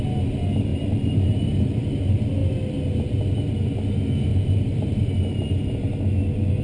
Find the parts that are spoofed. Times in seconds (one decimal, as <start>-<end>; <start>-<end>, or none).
0.7-2.0; 4.3-5.7